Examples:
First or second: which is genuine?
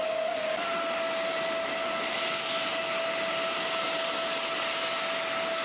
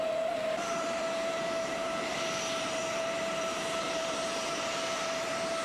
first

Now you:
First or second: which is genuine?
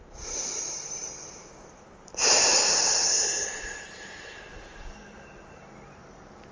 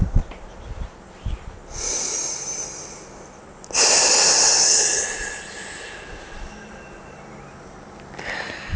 second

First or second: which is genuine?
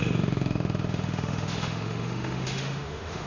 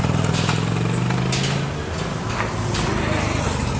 second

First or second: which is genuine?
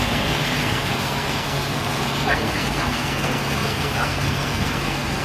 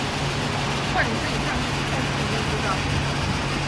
second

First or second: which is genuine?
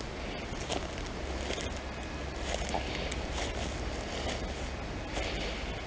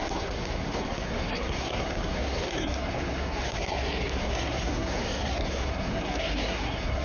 first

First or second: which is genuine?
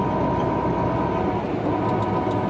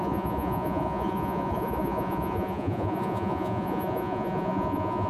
first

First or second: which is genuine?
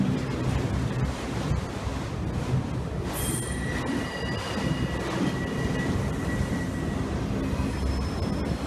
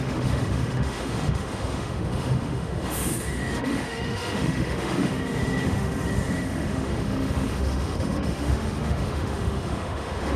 first